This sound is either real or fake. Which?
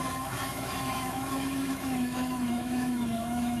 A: fake